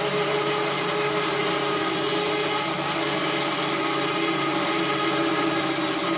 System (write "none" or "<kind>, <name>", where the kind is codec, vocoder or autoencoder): none